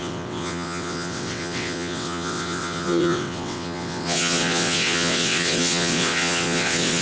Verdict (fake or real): fake